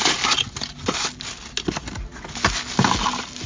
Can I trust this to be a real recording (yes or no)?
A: yes